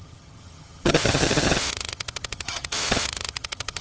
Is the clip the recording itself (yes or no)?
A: no